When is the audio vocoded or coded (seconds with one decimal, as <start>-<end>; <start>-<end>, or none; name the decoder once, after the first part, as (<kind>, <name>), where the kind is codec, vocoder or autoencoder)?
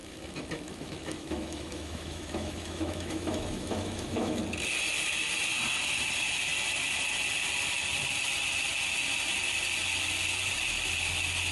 0.0-4.4 (autoencoder, DAC-VAE)